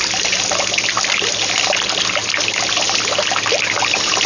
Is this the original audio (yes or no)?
yes